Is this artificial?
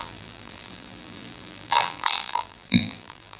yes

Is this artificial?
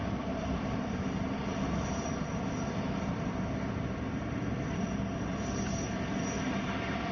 yes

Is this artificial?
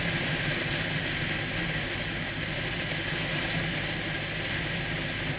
no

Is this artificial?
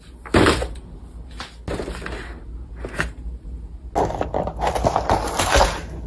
no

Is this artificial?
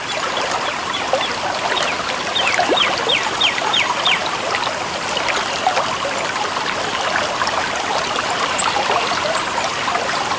no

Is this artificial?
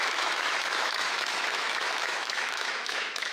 yes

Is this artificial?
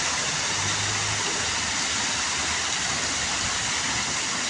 no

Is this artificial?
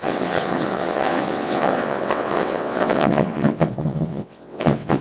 yes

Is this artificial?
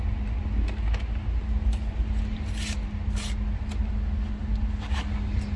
no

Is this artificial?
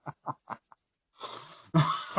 no